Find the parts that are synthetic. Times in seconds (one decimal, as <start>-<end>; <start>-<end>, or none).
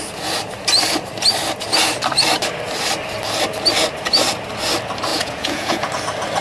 5.1-5.9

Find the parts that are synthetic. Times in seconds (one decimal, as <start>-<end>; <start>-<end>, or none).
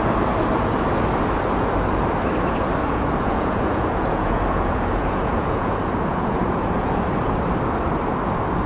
2.8-7.0